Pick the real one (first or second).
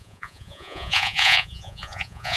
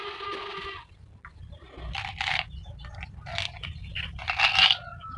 second